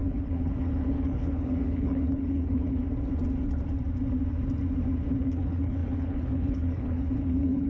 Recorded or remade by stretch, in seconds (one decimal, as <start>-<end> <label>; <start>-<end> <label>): 0.0-2.8 remade; 2.8-5.2 recorded; 5.2-7.7 remade